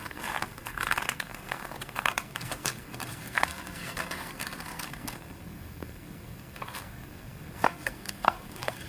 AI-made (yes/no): yes